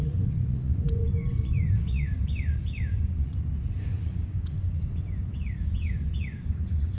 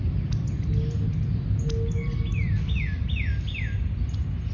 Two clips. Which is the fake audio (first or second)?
first